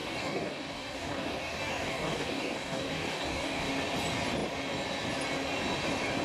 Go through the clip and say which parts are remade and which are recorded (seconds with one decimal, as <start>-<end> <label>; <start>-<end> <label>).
0.0-3.7 remade; 3.7-6.2 recorded